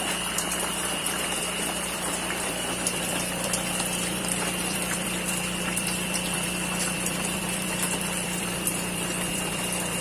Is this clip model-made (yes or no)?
yes